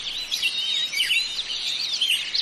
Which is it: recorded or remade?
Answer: recorded